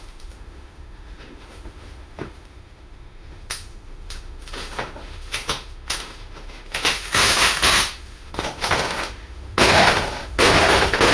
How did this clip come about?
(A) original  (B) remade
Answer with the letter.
B